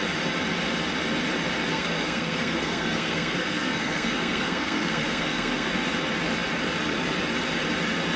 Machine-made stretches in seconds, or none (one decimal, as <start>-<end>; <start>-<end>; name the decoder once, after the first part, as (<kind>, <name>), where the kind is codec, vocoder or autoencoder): 1.7-5.7 (codec, SNAC)